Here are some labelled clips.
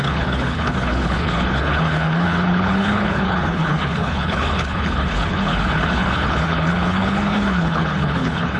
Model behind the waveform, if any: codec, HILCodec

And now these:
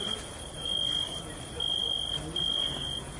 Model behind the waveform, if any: none